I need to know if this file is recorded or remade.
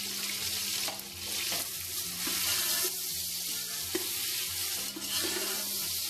recorded